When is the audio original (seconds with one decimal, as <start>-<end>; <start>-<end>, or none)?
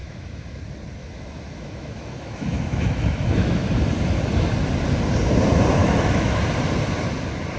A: 0.6-1.0; 3.7-5.8; 6.4-7.6